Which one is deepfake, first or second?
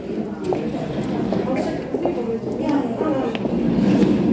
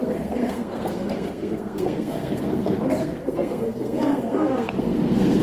second